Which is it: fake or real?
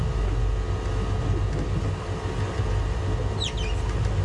real